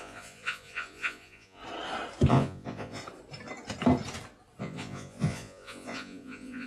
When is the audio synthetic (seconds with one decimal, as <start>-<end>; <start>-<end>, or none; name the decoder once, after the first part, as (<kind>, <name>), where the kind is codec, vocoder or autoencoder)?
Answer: 0.0-1.6 (vocoder, Vocos); 2.3-3.0; 4.6-6.7